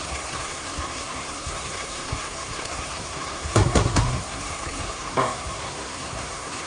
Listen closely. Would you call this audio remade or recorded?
remade